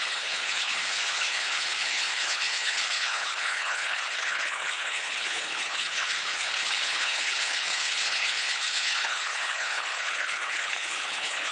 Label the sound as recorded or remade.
remade